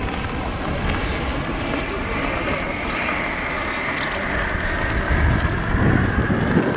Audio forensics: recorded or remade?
recorded